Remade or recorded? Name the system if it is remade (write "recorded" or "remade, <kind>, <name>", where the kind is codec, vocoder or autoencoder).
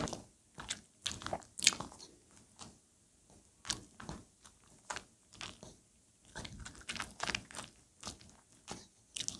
recorded